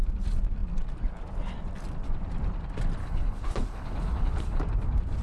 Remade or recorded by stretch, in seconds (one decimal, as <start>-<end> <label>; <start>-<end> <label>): 0.0-3.0 recorded; 3.0-4.6 remade; 4.6-5.2 recorded